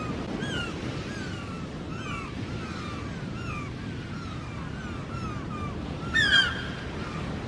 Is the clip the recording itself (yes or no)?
yes